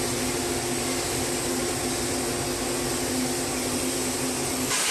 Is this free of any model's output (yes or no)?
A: yes